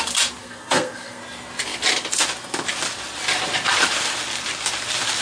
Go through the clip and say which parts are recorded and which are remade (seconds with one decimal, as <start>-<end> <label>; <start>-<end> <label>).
0.0-0.4 recorded; 0.4-1.2 remade; 1.2-5.2 recorded